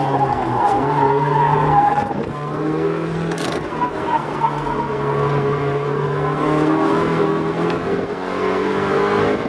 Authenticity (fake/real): fake